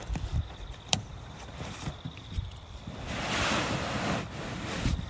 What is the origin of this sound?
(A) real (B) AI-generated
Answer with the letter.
B